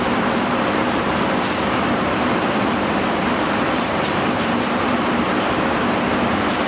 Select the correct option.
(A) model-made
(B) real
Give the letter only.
A